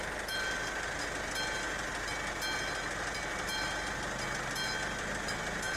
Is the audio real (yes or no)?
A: yes